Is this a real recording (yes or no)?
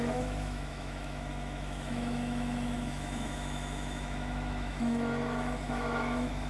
no